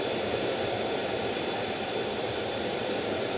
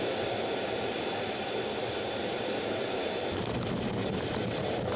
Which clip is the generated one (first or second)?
first